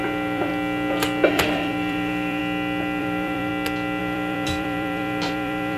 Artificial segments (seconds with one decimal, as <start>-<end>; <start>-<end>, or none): 0.0-0.5; 1.3-2.4; 3.0-3.5; 4.0-5.8

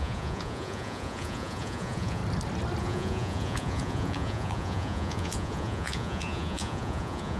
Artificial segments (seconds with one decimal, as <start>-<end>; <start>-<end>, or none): 0.0-2.2; 2.8-7.4

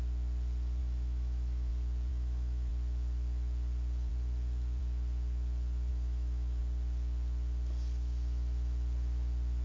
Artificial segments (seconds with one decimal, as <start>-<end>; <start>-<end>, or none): 0.8-1.7; 2.1-2.7; 5.9-6.6

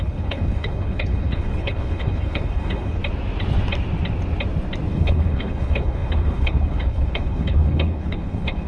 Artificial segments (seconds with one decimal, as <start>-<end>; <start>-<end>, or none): 0.0-3.0; 4.9-8.7

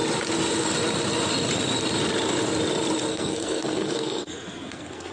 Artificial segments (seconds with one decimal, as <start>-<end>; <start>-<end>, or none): 3.1-5.1

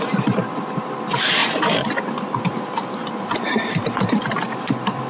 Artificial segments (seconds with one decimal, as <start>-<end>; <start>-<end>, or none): 0.0-5.1

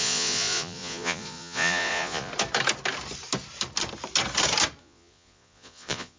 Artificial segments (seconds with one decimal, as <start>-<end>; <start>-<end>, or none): 0.0-2.3; 4.8-6.2